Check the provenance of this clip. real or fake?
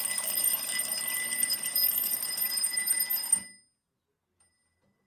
real